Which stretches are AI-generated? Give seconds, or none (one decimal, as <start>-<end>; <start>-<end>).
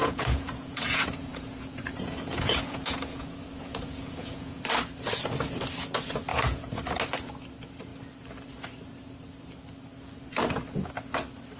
0.0-4.7; 6.3-6.8